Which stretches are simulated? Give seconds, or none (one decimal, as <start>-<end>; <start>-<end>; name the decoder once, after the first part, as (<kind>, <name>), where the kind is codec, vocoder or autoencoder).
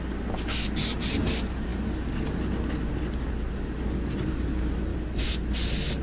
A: 0.0-4.9 (vocoder, BigVGAN v2)